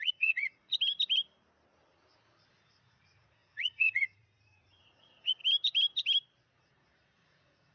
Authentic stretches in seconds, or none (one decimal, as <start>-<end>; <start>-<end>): 0.7-2.5; 5.4-6.6

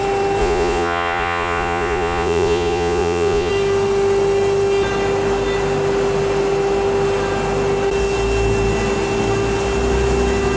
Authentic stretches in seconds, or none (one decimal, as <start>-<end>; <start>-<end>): 0.0-0.4; 3.5-10.6

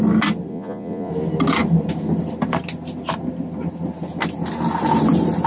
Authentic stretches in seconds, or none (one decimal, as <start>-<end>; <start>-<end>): 0.0-0.5; 1.1-5.5

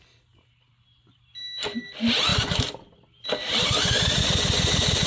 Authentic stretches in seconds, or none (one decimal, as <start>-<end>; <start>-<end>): 0.0-5.1

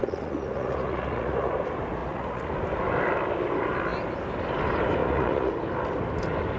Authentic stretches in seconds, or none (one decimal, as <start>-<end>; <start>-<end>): 1.5-2.0; 2.5-5.0; 5.5-6.6

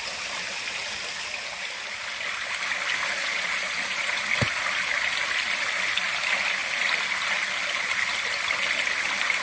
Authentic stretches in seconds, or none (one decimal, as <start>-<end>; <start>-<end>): 0.0-3.2; 4.2-9.4

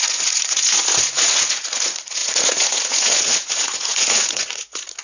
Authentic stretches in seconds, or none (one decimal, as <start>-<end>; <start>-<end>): none